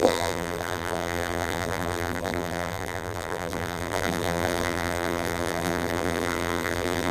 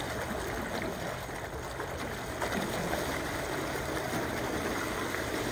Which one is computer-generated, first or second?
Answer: first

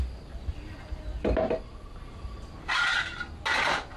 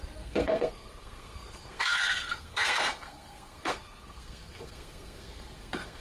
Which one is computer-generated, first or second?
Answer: second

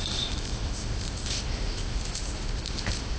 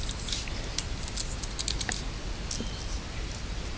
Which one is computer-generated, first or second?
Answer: first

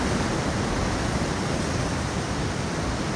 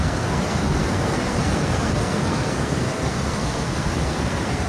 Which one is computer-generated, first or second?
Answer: second